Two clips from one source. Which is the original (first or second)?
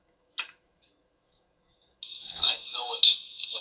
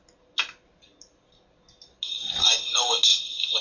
second